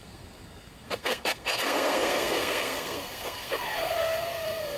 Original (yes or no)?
no